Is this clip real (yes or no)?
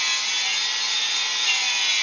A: yes